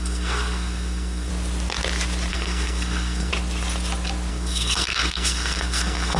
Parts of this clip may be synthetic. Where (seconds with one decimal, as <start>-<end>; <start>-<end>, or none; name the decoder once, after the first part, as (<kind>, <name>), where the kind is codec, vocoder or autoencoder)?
0.0-1.3 (codec, SNAC); 2.3-3.3; 4.3-6.2